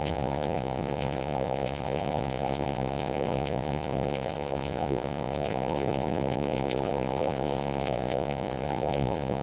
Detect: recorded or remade remade